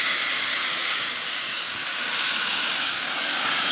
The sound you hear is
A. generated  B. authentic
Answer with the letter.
A